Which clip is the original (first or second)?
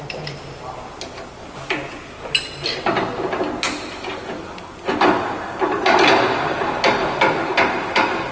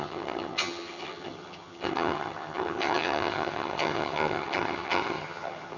first